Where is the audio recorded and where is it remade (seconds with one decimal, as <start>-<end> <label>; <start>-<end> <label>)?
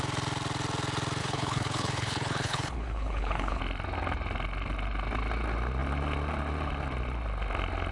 0.0-1.2 recorded; 1.2-3.6 remade; 3.6-7.9 recorded